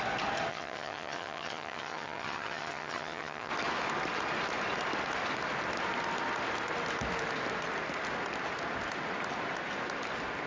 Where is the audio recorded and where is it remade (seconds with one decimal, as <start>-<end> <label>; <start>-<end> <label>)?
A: 0.0-0.5 recorded; 0.5-3.5 remade; 3.5-10.5 recorded